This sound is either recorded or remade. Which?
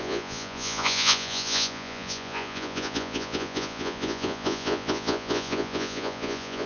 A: remade